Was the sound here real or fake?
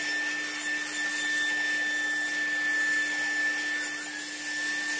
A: real